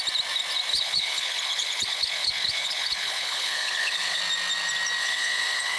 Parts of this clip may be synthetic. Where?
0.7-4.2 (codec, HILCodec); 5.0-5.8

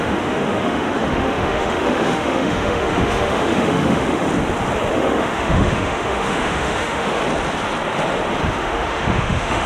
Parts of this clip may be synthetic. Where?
0.0-4.3 (autoencoder, DAC-VAE); 4.9-7.2; 8.5-9.7

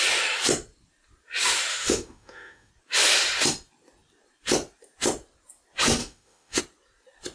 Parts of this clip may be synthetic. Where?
1.7-2.7 (autoencoder, DAC-VAE); 6.0-6.6

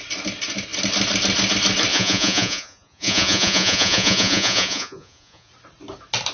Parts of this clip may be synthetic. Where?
1.9-5.5 (vocoder, Vocos)

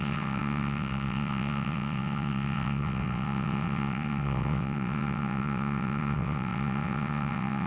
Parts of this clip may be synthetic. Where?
0.0-7.7 (vocoder, WaveNeXt)

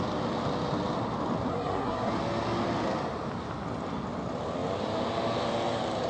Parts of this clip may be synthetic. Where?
1.5-2.1 (codec, SNAC)

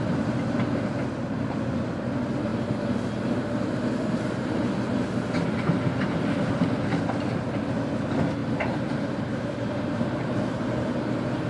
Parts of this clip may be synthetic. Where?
8.4-11.5 (vocoder, BigVGAN v2)